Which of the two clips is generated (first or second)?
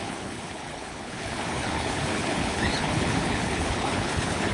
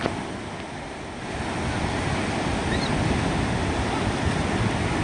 first